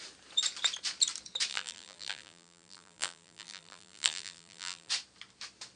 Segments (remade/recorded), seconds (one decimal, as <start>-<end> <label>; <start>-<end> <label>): 0.0-1.5 recorded; 1.5-4.9 remade; 4.9-5.8 recorded